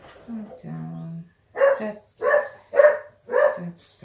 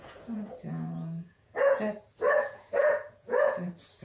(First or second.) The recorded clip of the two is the first